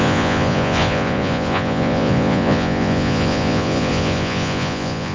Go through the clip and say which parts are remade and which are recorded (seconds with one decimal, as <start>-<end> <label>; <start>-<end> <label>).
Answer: 0.0-5.1 remade

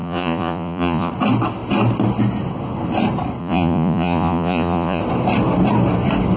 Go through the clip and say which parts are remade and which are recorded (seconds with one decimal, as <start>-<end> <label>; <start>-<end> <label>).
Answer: 0.0-1.1 remade; 1.1-3.4 recorded; 3.4-5.0 remade; 5.0-6.4 recorded